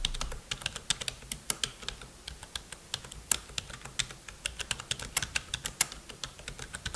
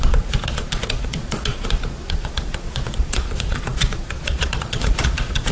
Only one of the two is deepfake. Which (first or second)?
second